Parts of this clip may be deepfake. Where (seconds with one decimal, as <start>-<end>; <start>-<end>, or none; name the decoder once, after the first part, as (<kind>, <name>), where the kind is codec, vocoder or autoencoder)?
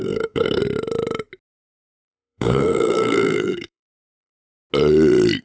0.0-0.6 (codec, SNAC); 1.8-4.3